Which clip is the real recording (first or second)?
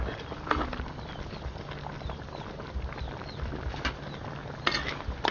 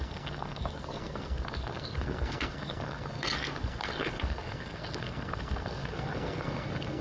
first